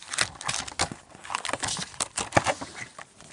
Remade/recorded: recorded